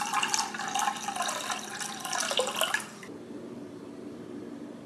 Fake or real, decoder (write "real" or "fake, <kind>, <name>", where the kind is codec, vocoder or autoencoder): real